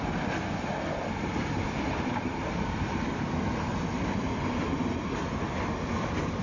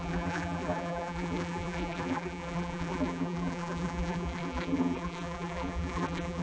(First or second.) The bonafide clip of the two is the first